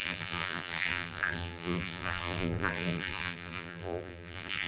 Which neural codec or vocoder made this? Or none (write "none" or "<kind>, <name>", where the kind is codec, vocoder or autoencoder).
vocoder, BigVGAN v2